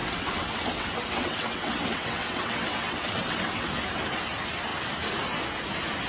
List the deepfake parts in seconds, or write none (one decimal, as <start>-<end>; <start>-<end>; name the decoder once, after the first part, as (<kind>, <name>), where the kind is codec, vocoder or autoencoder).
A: 0.0-3.7 (vocoder, WaveNeXt)